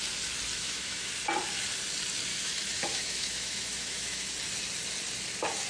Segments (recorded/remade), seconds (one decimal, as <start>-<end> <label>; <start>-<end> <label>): 0.0-0.5 recorded; 0.5-1.1 remade; 1.1-2.3 recorded; 2.3-4.3 remade; 4.3-5.7 recorded